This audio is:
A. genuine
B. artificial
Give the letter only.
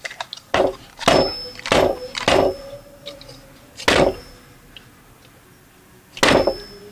A